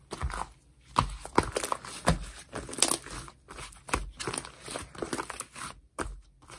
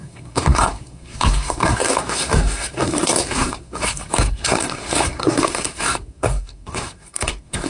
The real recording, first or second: first